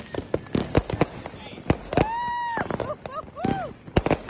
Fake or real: real